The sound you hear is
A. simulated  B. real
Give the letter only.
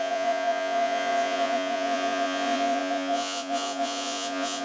A